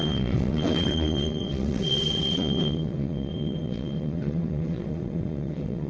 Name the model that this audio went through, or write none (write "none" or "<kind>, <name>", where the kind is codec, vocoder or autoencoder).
vocoder, WaveNeXt